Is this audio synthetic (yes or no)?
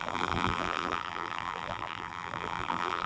yes